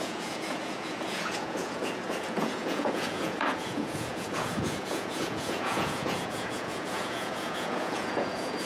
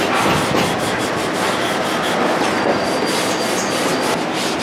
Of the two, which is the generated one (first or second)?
first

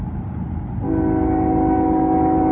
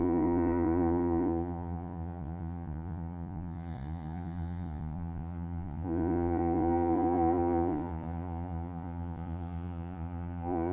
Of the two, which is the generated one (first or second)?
second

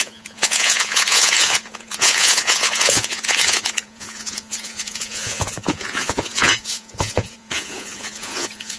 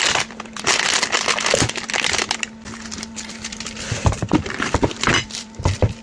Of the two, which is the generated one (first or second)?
first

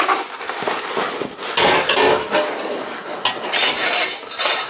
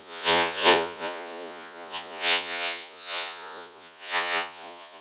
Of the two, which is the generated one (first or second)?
second